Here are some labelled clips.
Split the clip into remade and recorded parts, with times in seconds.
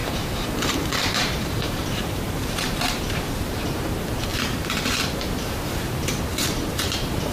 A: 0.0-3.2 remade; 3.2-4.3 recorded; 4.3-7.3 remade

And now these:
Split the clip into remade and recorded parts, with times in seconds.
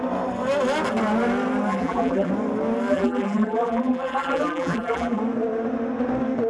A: 0.0-1.7 recorded; 1.7-2.3 remade; 2.3-2.9 recorded; 2.9-5.2 remade; 5.2-6.5 recorded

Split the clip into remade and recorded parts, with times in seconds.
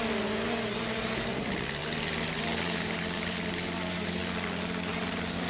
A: 0.0-1.8 recorded; 1.8-4.2 remade; 4.2-4.9 recorded; 4.9-5.5 remade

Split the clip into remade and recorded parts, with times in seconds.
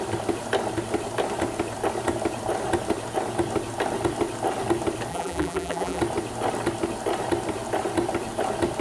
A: 0.0-5.1 recorded; 5.1-6.0 remade; 6.0-8.8 recorded